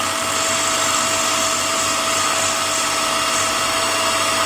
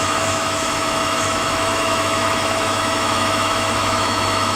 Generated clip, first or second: second